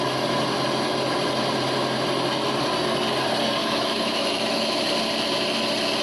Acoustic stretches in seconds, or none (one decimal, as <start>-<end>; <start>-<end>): 0.0-3.6; 4.8-6.0